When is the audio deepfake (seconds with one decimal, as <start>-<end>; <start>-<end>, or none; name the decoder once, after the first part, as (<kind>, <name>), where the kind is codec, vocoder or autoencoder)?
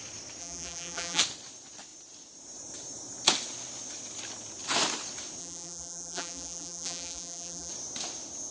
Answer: 0.4-1.2 (vocoder, BigVGAN v2); 5.4-7.7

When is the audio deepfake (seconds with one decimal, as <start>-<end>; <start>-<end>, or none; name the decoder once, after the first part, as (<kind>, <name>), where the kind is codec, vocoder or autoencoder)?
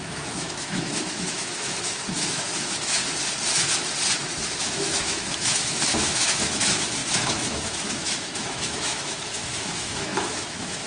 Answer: 0.0-3.0 (autoencoder, DAC-VAE); 4.6-10.9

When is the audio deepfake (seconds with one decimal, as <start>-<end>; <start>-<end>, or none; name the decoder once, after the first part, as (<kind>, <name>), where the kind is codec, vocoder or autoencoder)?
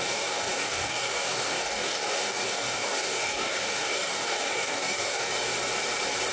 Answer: 0.0-5.3 (codec, DAC)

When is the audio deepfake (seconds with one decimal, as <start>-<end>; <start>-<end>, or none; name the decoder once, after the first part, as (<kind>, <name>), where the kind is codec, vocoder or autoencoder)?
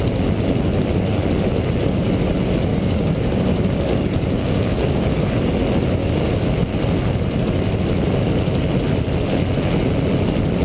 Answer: 2.7-5.5 (codec, DAC); 6.0-6.5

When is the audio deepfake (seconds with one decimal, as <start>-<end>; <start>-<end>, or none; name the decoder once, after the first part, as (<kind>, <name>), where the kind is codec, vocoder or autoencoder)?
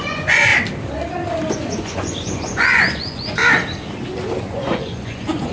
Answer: 0.0-0.5 (vocoder, Vocos); 1.5-3.4; 4.4-5.5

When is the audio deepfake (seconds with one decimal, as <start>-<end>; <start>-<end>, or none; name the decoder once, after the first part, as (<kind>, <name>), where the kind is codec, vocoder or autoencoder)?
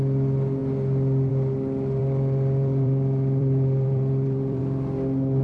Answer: 2.0-4.6 (vocoder, BigVGAN v2)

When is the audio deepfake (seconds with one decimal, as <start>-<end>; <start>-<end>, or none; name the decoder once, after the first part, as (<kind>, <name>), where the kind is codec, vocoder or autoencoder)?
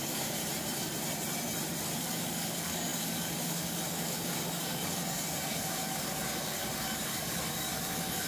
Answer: 0.0-0.4 (codec, DAC); 2.0-8.3